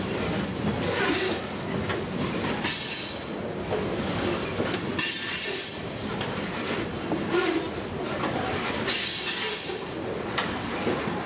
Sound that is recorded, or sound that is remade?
recorded